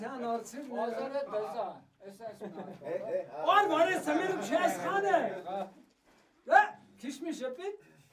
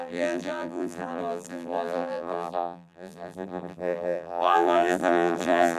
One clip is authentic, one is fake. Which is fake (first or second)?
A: second